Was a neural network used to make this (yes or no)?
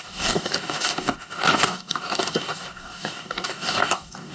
yes